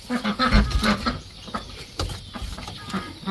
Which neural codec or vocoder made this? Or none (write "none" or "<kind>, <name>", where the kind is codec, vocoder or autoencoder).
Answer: none